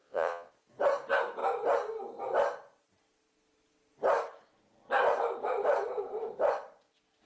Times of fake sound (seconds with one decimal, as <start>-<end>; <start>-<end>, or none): 0.0-0.5